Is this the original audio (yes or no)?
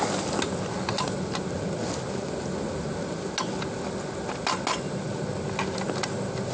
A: yes